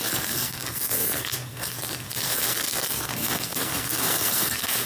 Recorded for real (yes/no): no